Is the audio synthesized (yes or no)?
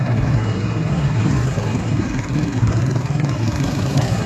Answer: yes